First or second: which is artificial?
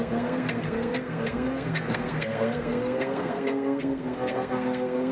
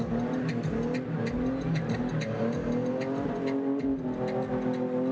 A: first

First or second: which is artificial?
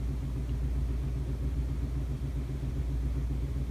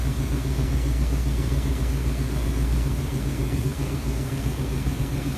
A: second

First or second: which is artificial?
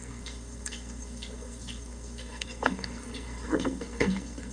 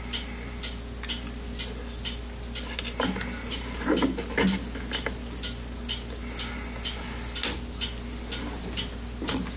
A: first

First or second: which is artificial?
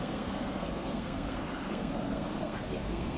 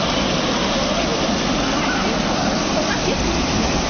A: first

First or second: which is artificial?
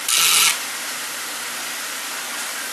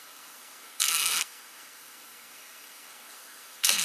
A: second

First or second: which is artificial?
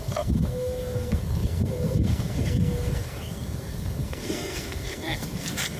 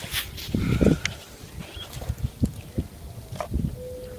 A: first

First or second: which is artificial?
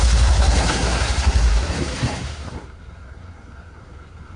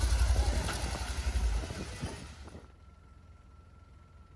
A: first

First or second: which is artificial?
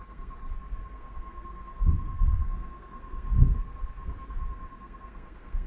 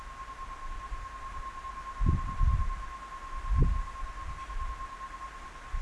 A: first